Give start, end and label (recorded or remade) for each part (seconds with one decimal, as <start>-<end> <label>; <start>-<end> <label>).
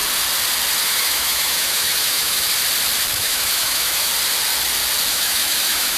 0.0-0.8 recorded; 0.8-2.5 remade; 2.5-3.1 recorded; 3.1-4.1 remade; 4.1-5.1 recorded; 5.1-6.0 remade